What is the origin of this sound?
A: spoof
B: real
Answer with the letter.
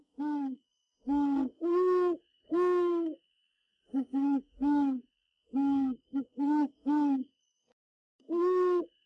A